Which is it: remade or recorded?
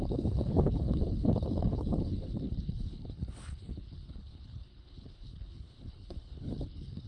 remade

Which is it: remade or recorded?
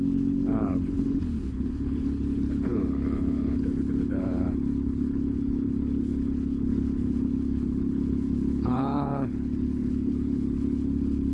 remade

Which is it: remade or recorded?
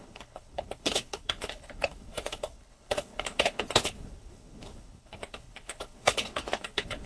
remade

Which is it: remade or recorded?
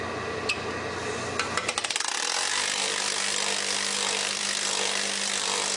recorded